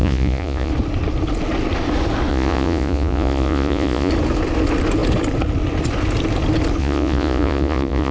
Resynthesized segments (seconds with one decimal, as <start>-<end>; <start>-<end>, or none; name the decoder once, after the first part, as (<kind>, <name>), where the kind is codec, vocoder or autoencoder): 0.0-0.7 (vocoder, Vocos); 2.3-4.1; 6.8-8.1